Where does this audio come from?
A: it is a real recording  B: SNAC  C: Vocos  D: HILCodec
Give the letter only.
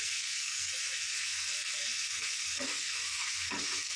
B